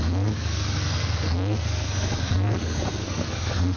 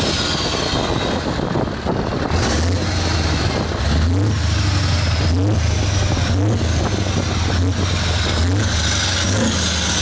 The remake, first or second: first